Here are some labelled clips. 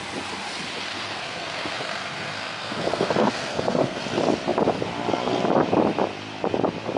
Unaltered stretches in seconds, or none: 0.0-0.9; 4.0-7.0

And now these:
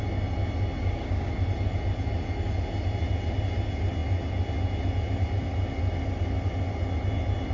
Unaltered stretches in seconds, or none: 0.0-0.8; 1.3-7.5